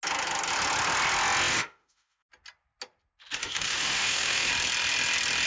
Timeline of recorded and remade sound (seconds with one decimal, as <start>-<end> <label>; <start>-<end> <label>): 0.0-1.5 recorded; 1.5-2.3 remade; 2.3-3.4 recorded; 3.4-4.5 remade; 4.5-5.5 recorded